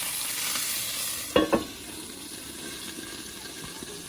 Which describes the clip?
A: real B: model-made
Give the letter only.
A